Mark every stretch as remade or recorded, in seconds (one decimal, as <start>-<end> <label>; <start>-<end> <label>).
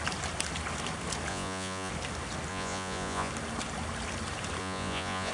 0.0-1.3 recorded; 1.3-1.9 remade; 1.9-2.5 recorded; 2.5-3.3 remade; 3.3-4.6 recorded; 4.6-5.3 remade